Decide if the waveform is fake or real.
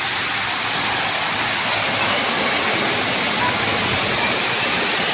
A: real